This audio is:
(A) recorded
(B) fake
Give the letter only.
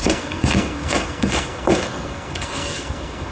B